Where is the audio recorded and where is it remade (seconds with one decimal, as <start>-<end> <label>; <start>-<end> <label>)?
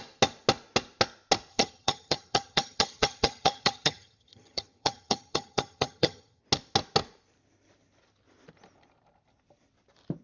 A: 0.0-1.5 recorded; 1.5-6.4 remade; 6.4-10.2 recorded